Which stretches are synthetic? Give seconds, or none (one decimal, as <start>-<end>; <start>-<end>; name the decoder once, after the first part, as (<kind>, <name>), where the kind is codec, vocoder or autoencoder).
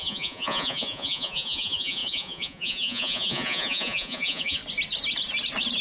0.0-4.6 (vocoder, Vocos)